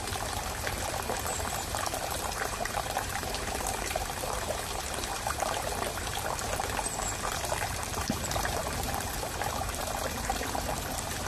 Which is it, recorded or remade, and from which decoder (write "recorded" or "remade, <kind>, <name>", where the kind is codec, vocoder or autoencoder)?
remade, vocoder, BigVGAN v2